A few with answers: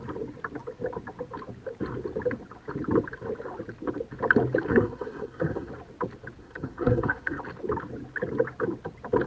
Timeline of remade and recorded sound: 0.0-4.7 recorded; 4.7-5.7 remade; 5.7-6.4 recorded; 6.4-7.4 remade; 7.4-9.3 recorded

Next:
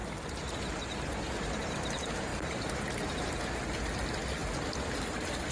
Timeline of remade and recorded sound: 0.0-5.5 recorded

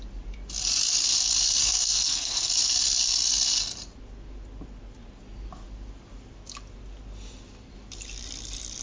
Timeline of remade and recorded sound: 0.0-1.6 recorded; 1.6-2.5 remade; 2.5-8.8 recorded

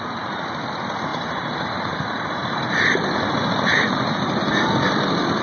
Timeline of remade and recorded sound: 0.0-1.1 recorded; 1.1-2.2 remade; 2.2-3.7 recorded; 3.7-4.7 remade; 4.7-5.4 recorded

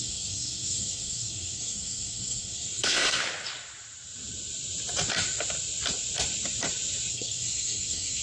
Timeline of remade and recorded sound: 0.0-3.2 remade; 3.2-7.1 recorded; 7.1-8.2 remade